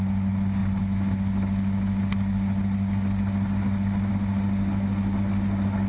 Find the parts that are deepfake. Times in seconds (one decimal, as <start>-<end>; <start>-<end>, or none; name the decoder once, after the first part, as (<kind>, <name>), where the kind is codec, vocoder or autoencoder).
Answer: none